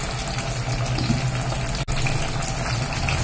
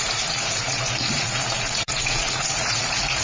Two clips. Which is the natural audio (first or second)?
first